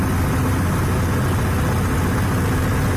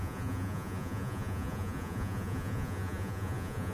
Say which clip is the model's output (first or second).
second